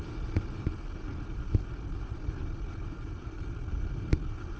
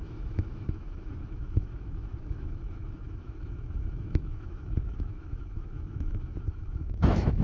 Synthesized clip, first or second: second